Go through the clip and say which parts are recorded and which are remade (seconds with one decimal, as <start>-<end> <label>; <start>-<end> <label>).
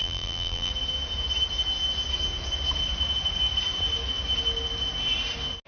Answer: 0.0-0.7 remade; 0.7-5.7 recorded